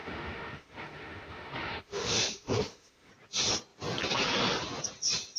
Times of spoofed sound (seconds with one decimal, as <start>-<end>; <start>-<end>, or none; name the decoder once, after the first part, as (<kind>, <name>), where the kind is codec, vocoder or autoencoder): 0.0-3.1 (autoencoder, DAC-VAE)